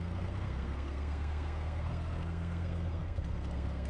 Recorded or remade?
remade